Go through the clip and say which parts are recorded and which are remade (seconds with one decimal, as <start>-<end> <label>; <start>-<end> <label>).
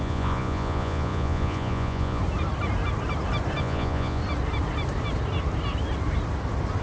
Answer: 0.0-2.2 remade; 2.2-3.6 recorded; 3.6-4.2 remade; 4.2-6.8 recorded